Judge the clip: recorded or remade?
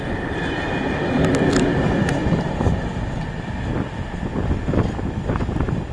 recorded